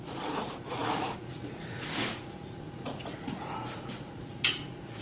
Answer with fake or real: fake